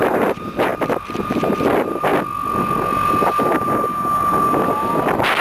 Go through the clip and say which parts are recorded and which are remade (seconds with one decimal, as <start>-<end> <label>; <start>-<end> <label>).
0.0-0.7 remade; 0.7-1.7 recorded; 1.7-2.1 remade; 2.1-5.4 recorded